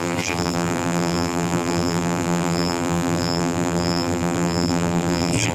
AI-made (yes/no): yes